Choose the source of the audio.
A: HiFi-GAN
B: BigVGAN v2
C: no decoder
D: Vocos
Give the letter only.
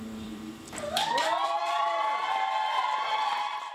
B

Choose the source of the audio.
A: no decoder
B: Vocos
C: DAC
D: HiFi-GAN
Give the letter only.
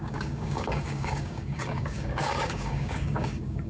C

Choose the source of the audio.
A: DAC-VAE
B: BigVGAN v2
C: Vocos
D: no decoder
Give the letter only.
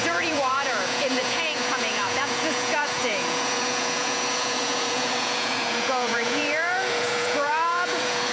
C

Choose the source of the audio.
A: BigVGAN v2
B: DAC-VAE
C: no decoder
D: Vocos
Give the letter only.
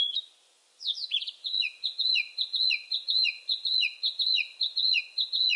D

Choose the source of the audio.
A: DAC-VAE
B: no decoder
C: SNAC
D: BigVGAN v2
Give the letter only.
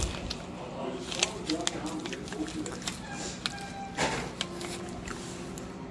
B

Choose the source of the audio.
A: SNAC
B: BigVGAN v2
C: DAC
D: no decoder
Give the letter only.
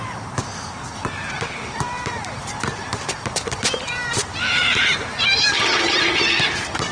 B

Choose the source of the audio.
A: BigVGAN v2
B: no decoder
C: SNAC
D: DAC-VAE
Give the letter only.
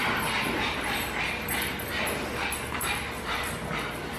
B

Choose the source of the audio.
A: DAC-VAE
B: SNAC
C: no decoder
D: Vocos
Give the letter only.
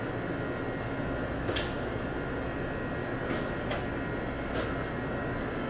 C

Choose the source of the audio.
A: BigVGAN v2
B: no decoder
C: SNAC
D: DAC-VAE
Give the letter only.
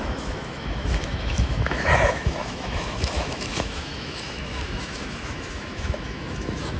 D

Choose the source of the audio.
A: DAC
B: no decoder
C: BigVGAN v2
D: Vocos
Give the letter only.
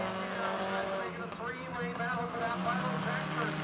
B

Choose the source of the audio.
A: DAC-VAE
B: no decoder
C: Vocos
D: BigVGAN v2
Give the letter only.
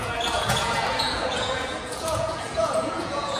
C